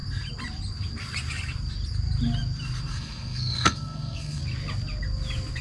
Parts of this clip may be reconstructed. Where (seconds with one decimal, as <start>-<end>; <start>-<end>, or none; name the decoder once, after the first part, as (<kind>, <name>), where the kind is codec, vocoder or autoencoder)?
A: 2.9-4.4 (codec, SNAC)